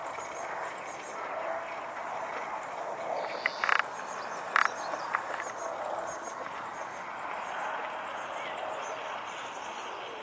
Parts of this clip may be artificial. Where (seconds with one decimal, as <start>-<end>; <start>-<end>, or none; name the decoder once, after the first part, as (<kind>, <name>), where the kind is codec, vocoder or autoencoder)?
none